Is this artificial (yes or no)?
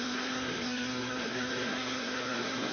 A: yes